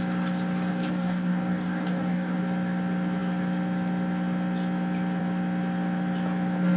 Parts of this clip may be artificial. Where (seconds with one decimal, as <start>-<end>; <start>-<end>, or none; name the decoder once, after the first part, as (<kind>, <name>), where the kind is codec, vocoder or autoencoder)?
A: 0.7-2.4 (codec, DAC)

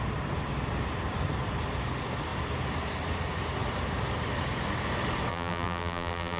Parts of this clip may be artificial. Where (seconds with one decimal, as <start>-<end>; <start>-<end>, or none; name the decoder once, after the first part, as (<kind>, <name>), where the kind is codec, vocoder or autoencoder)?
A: 5.3-6.4 (vocoder, BigVGAN v2)

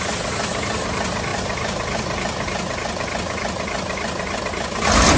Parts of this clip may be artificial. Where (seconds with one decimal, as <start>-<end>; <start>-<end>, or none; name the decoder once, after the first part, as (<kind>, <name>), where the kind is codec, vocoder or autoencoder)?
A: none

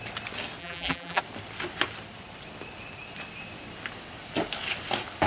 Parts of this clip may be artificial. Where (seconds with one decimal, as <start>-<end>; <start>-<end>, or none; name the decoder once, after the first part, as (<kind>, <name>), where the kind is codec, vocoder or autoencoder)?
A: 0.6-1.2 (vocoder, BigVGAN v2)

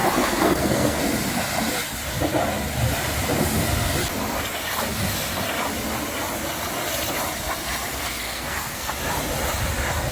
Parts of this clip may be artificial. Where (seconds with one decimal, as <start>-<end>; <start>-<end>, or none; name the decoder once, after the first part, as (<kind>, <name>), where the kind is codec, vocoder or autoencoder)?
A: 0.0-1.0 (codec, SNAC); 7.9-8.9

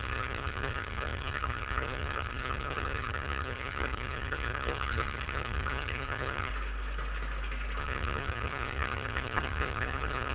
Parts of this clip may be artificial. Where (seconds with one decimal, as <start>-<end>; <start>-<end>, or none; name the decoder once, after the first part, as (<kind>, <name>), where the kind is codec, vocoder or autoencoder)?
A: 0.0-6.5 (vocoder, HiFi-GAN); 7.8-10.3

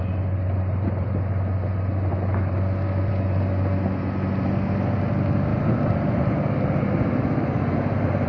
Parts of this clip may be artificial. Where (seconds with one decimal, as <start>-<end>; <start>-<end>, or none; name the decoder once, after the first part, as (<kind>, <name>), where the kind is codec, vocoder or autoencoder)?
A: 5.5-8.3 (vocoder, BigVGAN v2)

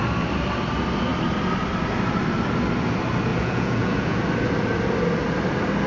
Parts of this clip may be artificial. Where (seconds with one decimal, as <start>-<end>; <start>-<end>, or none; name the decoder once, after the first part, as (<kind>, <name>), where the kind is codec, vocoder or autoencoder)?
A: 3.3-4.2 (vocoder, Vocos)